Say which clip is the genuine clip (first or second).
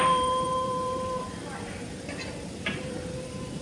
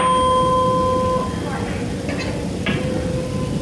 second